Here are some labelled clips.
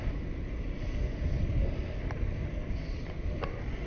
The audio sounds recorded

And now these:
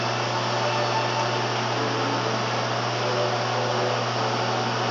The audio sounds recorded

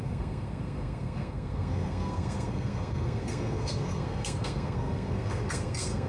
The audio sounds remade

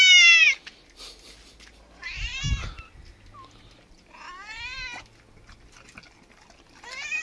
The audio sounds recorded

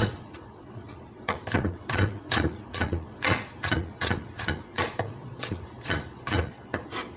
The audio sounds remade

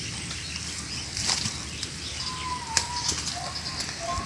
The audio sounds recorded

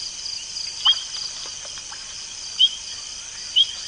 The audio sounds recorded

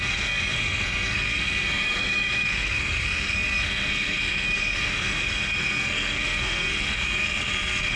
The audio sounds remade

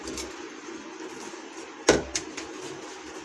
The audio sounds recorded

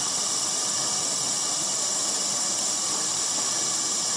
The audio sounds recorded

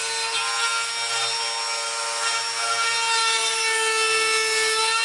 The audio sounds recorded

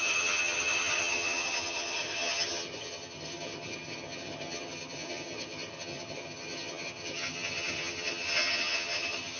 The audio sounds remade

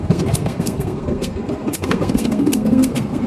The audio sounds remade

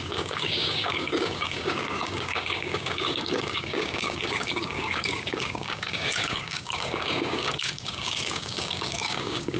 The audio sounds remade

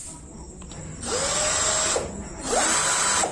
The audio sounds recorded